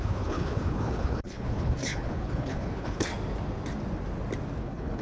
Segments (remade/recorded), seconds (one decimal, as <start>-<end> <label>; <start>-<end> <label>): 0.0-3.1 remade; 3.1-4.6 recorded; 4.6-5.0 remade